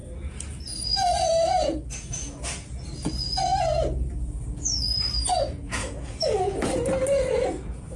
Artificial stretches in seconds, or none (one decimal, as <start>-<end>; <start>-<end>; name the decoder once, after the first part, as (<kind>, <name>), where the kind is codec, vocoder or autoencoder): 5.8-6.4 (codec, DAC)

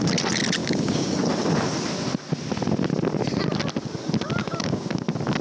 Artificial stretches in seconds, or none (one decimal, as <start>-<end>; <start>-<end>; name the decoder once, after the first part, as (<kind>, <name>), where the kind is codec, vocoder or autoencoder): 0.6-1.1 (codec, DAC); 4.4-5.0

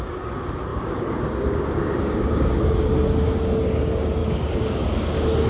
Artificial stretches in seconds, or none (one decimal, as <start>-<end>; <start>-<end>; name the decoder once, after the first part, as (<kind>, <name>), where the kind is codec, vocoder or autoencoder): 0.0-5.5 (codec, DAC)

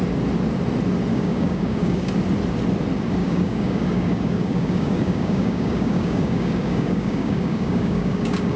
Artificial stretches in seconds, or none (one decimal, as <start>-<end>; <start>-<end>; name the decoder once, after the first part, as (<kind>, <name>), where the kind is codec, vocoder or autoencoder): 1.1-2.1 (codec, DAC); 3.2-8.6

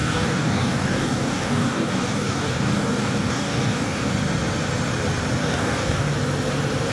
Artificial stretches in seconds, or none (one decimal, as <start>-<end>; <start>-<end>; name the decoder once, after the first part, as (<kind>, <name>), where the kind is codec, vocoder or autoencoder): 0.0-4.1 (codec, DAC); 5.4-6.1